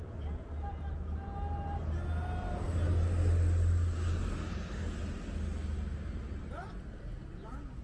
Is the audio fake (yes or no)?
no